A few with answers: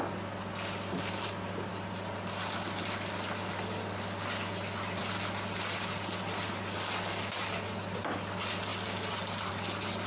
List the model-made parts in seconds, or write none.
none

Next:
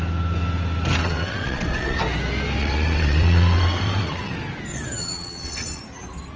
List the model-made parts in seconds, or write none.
1.0-2.0 (vocoder, WaveNeXt); 2.6-4.3; 4.7-5.8

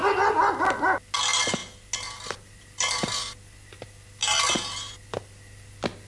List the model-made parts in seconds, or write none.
none

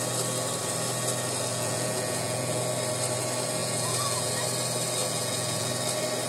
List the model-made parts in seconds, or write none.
1.5-2.6 (vocoder, Vocos); 3.6-4.3; 5.0-5.7

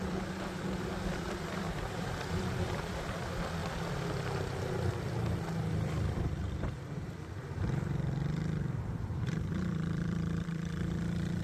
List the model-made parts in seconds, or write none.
0.0-3.6 (vocoder, BigVGAN v2); 6.5-11.4

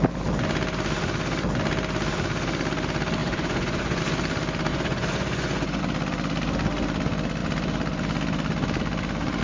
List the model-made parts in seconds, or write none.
3.2-4.0 (vocoder, Vocos); 4.7-5.8

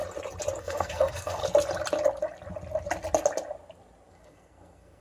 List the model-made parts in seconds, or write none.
0.6-1.4 (codec, SNAC); 4.1-5.0

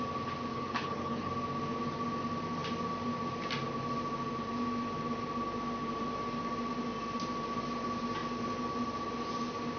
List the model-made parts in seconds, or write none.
0.5-1.3 (codec, HILCodec)